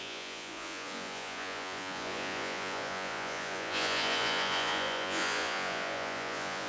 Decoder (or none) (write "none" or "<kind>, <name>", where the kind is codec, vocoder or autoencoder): vocoder, Vocos